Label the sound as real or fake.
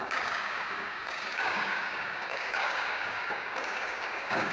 fake